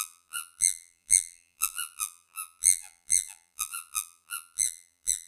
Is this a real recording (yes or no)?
no